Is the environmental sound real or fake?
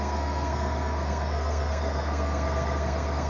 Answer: fake